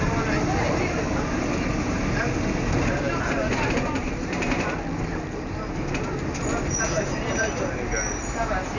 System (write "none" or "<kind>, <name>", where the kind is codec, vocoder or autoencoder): none